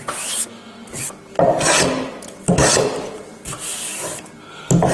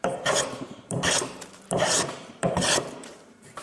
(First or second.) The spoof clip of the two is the second